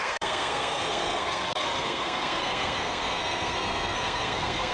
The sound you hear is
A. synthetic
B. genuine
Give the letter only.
A